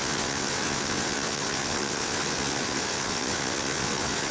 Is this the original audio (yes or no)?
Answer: no